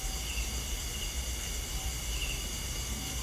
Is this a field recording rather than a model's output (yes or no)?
yes